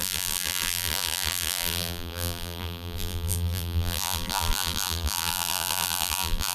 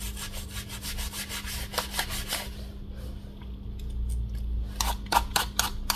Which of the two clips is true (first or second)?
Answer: second